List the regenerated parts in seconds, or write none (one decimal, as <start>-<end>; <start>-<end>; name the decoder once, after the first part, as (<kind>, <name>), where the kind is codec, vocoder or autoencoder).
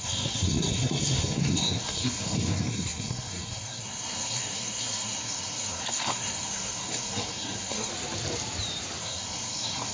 0.0-7.9 (codec, SNAC); 9.0-9.9